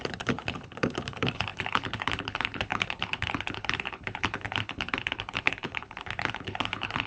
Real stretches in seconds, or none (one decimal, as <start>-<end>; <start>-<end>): none